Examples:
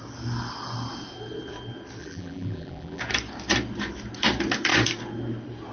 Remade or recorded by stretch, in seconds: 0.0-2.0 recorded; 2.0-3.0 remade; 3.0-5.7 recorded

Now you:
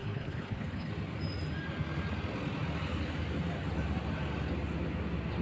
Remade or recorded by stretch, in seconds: 0.0-0.9 remade; 0.9-5.4 recorded

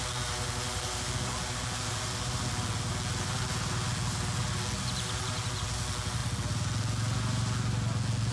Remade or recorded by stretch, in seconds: 0.0-8.3 recorded

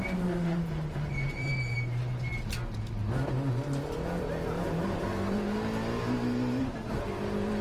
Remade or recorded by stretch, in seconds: 0.0-1.5 remade; 1.5-3.5 recorded; 3.5-7.6 remade

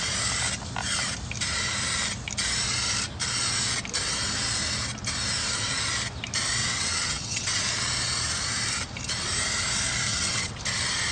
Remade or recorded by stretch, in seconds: 0.0-6.6 recorded; 6.6-7.6 remade; 7.6-10.1 recorded; 10.1-10.6 remade; 10.6-11.1 recorded

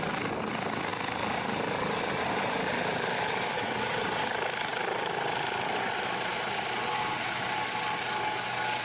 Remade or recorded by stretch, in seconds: 0.0-8.8 recorded